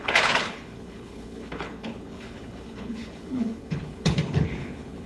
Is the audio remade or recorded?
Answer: remade